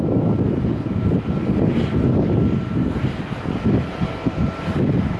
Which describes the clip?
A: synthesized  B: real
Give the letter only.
B